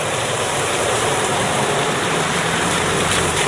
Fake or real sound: fake